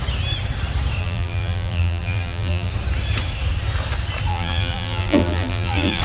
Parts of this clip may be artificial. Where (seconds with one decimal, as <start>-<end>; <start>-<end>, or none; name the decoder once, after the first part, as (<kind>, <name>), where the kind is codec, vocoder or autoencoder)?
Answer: 1.0-2.7 (vocoder, BigVGAN v2); 4.3-6.0